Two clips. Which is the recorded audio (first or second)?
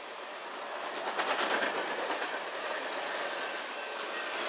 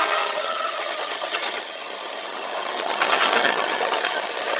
first